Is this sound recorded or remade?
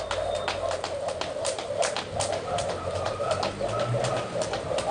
recorded